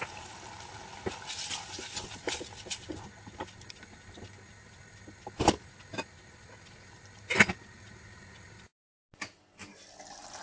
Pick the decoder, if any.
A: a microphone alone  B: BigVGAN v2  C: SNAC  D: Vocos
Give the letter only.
A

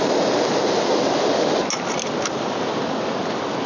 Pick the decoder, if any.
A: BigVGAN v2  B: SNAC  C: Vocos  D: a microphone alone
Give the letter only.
D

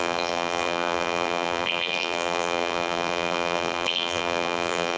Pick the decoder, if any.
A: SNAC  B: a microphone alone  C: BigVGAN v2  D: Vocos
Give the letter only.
C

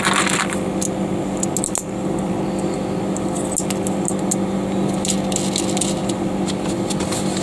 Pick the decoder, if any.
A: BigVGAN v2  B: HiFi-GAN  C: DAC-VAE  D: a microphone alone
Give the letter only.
D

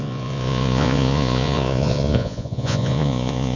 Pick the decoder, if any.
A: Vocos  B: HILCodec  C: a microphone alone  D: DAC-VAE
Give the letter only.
A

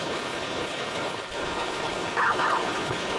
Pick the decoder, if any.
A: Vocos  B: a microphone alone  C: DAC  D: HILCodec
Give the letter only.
D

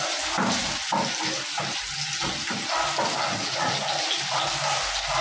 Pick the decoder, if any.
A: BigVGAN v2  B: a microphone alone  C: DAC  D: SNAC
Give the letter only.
B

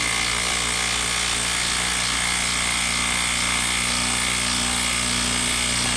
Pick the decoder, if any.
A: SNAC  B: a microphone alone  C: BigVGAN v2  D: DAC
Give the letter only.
B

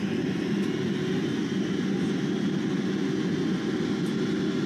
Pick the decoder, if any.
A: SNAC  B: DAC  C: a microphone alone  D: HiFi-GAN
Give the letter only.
C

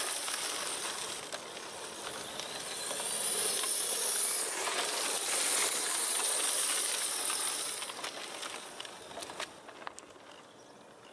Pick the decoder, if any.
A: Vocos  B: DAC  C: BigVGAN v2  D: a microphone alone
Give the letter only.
D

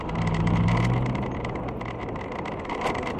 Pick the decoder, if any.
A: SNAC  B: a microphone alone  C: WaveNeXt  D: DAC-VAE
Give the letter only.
B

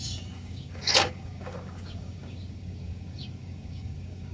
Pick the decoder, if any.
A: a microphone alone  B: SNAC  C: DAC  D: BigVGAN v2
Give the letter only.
C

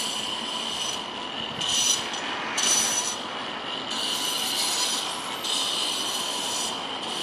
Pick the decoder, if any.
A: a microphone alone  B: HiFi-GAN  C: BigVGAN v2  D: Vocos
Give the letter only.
A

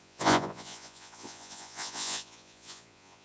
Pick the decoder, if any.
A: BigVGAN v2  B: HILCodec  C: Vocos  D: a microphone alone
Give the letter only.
C